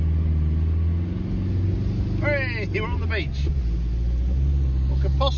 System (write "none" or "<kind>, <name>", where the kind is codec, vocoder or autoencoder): none